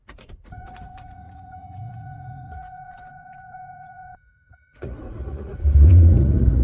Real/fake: fake